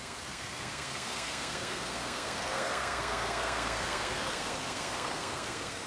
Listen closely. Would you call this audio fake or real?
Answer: fake